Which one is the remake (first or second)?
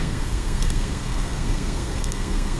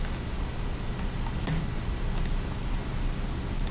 first